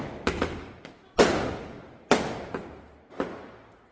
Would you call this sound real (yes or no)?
yes